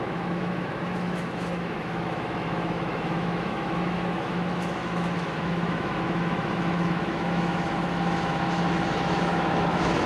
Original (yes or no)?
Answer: no